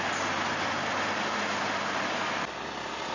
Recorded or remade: recorded